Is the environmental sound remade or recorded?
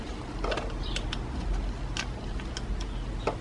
recorded